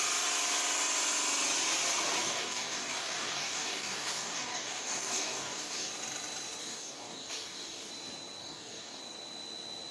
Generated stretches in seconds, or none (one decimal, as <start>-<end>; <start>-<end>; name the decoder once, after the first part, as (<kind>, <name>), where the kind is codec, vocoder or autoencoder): 2.2-5.9 (codec, DAC); 6.6-7.9; 8.4-9.0